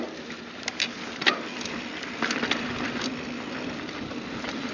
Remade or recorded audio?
recorded